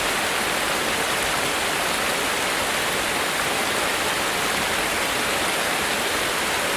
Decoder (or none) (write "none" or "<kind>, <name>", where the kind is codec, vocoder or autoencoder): none